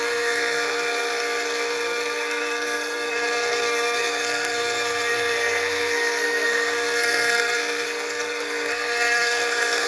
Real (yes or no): no